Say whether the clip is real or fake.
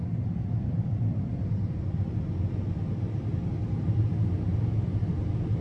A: real